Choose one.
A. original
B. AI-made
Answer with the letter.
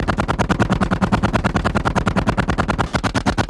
A